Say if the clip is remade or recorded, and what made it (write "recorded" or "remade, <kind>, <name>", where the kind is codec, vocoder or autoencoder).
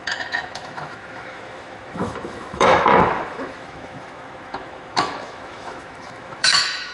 remade, autoencoder, DAC-VAE